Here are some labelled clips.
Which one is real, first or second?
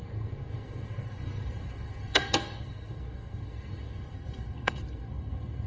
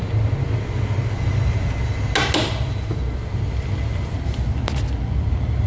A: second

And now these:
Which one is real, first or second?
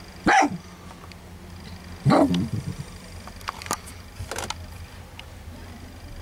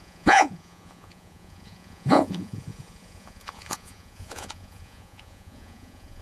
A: first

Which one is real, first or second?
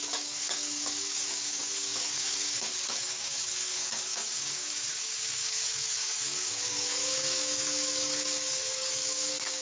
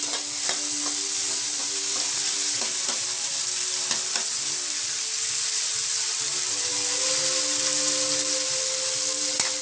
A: second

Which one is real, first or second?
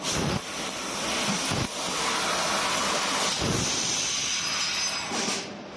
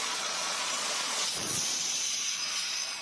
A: first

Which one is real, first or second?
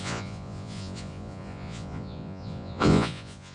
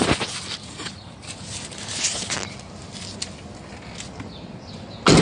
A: second